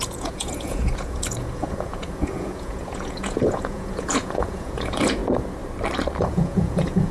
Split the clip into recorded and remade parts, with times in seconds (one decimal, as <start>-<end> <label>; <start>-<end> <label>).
0.0-5.2 remade; 5.2-6.2 recorded; 6.2-7.1 remade